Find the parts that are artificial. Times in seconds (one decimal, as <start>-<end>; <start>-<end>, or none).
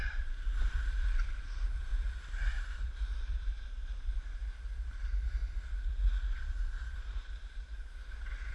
0.0-1.9; 2.8-5.4; 6.4-8.5